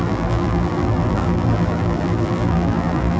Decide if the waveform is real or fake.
fake